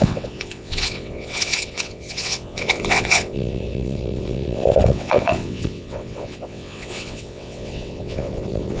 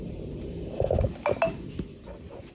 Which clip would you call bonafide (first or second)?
second